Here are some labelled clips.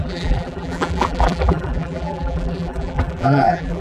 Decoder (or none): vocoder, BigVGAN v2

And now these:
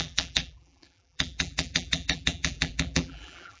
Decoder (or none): vocoder, BigVGAN v2